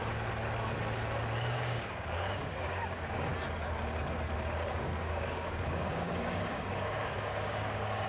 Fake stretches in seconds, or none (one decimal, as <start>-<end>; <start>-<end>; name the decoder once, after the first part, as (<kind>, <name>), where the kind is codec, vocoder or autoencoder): 1.5-3.3 (codec, DAC); 4.7-8.1